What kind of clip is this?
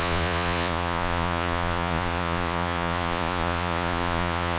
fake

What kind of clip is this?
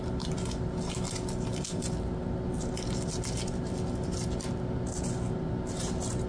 real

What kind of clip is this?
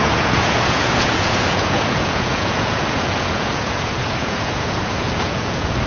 fake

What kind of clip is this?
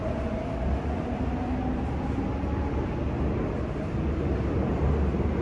real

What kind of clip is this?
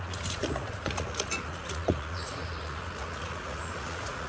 fake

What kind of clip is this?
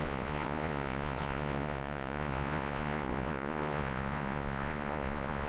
fake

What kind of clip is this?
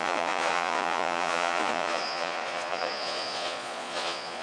fake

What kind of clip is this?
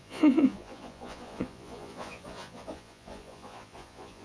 fake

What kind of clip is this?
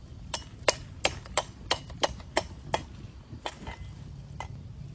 real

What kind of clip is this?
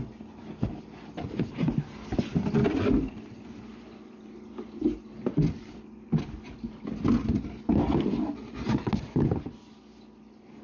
real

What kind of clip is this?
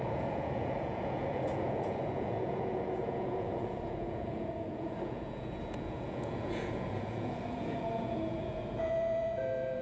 fake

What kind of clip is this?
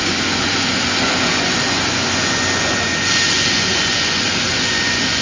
fake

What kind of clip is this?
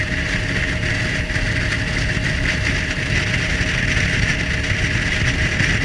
real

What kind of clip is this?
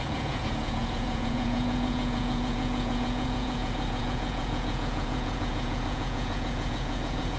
fake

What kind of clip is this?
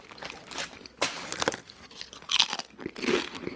real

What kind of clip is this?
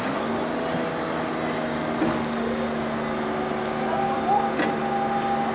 real